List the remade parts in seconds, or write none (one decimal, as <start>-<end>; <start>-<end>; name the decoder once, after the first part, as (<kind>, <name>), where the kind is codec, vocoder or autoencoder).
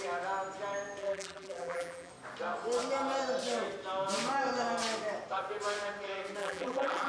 1.0-2.1 (vocoder, BigVGAN v2); 6.4-7.1